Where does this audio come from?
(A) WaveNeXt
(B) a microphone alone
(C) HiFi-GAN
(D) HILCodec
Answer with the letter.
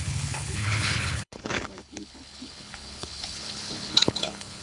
D